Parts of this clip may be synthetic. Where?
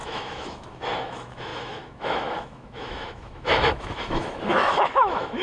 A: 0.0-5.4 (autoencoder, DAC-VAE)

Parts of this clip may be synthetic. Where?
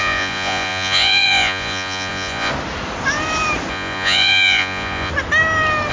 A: 0.0-2.5 (vocoder, Vocos); 3.7-5.1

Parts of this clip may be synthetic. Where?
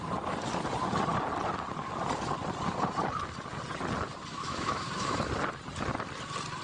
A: 4.3-5.3 (autoencoder, DAC-VAE)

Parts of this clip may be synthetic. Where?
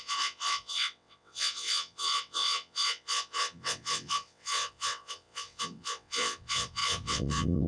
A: 0.0-7.7 (vocoder, WaveNeXt)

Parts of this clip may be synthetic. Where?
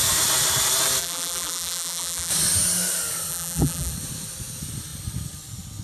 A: 1.0-2.3 (vocoder, BigVGAN v2); 3.3-3.9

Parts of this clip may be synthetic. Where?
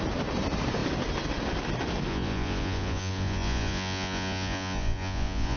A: 2.1-5.6 (vocoder, Vocos)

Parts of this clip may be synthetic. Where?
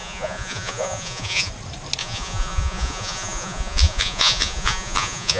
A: 0.0-1.5 (vocoder, Vocos); 2.0-5.4